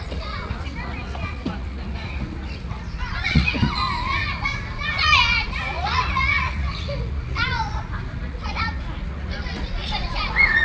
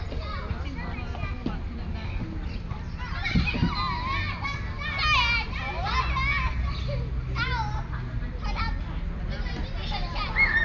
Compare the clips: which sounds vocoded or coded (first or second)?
first